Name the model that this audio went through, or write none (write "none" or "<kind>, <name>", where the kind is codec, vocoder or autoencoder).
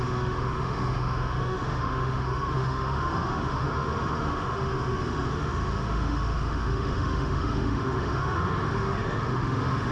autoencoder, DAC-VAE